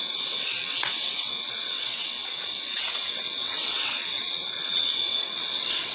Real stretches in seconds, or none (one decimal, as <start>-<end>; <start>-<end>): none